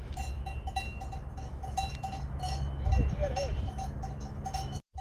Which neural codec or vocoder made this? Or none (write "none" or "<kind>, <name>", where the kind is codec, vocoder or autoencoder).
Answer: autoencoder, DAC-VAE